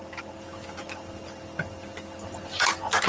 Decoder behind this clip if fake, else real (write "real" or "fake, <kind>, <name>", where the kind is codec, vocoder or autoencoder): real